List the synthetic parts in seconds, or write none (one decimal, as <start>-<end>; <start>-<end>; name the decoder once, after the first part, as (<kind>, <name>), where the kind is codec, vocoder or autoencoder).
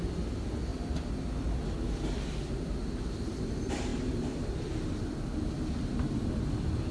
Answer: 0.7-1.6 (vocoder, BigVGAN v2); 3.9-6.3